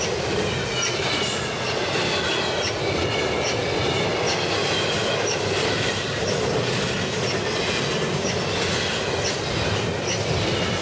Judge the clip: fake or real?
real